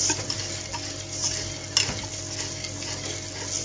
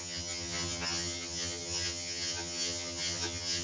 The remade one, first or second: second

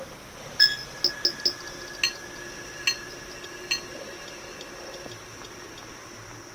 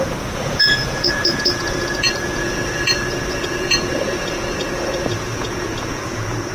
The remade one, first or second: second